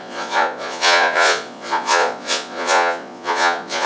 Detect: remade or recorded remade